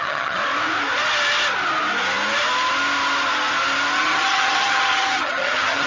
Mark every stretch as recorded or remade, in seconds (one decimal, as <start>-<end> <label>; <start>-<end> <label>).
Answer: 0.0-0.4 remade; 0.4-3.9 recorded; 3.9-5.9 remade